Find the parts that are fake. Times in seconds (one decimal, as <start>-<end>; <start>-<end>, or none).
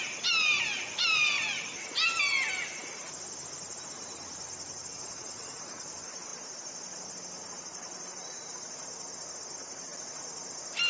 4.9-5.8